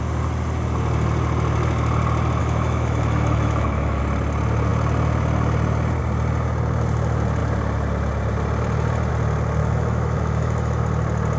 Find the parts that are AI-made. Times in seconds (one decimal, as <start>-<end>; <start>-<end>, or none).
2.4-4.0; 9.6-10.8